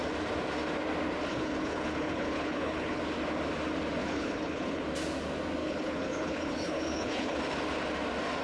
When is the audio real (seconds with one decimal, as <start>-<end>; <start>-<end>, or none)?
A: 0.0-1.3; 3.0-4.0; 4.8-5.6; 7.4-8.4